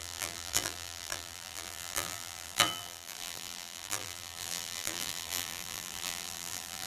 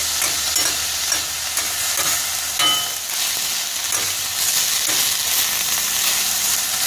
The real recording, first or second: second